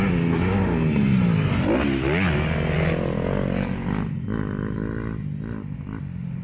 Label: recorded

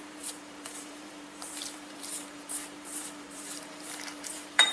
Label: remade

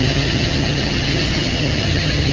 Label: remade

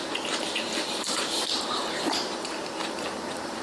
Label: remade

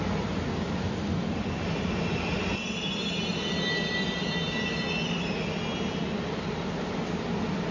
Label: recorded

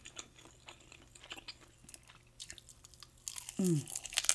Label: recorded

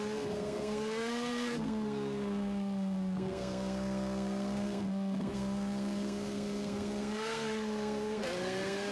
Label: remade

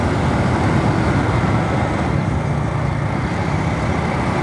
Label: recorded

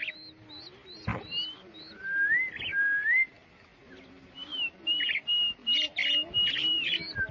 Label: recorded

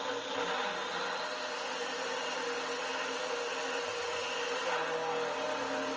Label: recorded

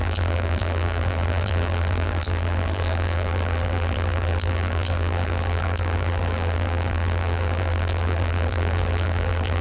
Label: remade